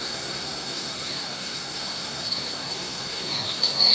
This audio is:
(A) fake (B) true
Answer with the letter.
A